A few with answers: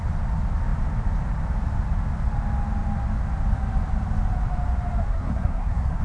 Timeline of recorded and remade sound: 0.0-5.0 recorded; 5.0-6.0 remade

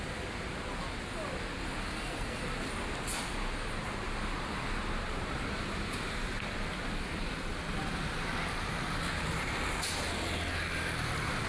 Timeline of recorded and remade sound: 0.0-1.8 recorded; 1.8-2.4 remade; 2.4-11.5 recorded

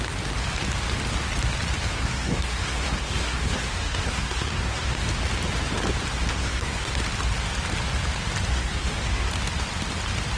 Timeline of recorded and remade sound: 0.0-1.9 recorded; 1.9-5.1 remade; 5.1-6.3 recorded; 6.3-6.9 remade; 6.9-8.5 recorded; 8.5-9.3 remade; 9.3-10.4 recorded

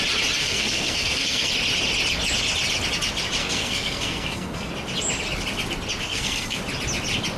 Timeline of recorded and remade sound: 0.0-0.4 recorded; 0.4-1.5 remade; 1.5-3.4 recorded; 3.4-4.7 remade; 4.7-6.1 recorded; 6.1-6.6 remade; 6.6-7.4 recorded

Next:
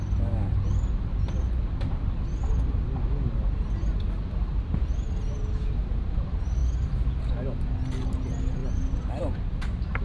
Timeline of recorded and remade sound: 0.0-10.0 recorded

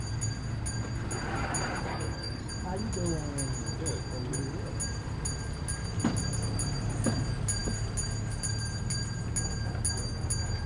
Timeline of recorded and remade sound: 0.0-1.9 recorded; 1.9-2.5 remade; 2.5-10.7 recorded